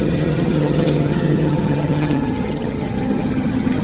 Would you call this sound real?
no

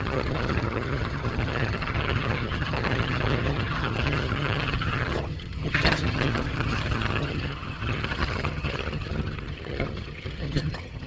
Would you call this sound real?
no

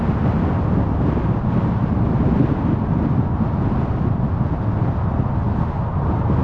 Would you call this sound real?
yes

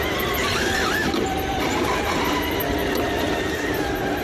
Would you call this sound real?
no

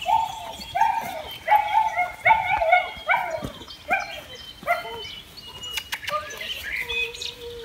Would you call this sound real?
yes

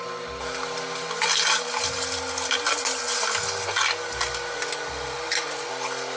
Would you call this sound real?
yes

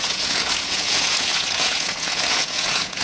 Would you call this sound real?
no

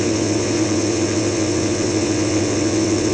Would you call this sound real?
no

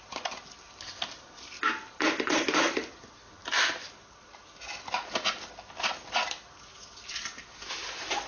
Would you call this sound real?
yes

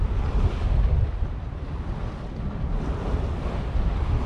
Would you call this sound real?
yes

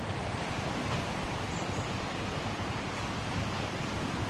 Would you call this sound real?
yes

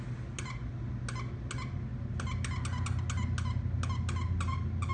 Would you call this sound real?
yes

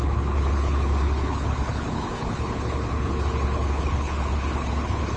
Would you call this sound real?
no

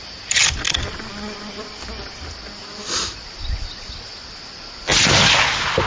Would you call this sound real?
yes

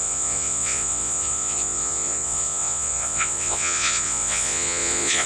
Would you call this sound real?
no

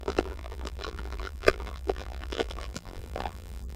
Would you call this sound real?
no